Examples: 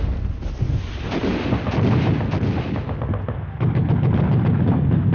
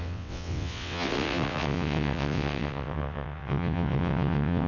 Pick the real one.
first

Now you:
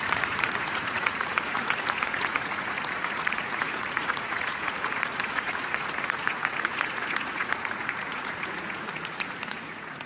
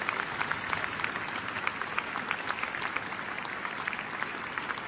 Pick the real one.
second